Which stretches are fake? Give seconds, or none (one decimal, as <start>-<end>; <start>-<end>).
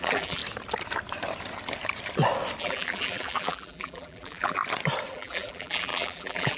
0.0-0.4; 2.6-4.6; 5.1-6.6